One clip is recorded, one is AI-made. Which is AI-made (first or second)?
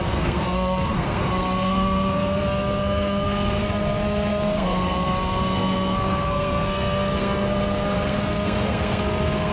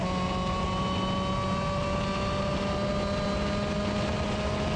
first